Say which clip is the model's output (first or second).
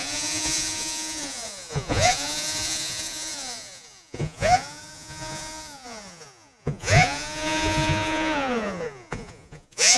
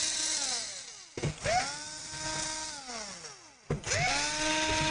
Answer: first